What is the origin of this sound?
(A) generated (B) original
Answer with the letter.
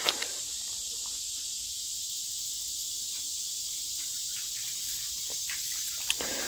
A